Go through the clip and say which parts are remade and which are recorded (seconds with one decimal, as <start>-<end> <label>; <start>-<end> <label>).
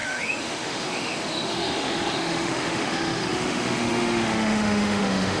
0.0-5.4 remade